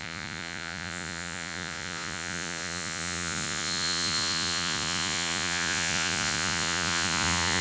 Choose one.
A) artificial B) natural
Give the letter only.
A